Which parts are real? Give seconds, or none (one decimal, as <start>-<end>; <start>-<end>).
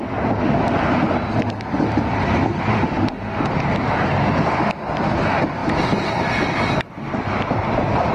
0.0-2.7; 3.5-8.1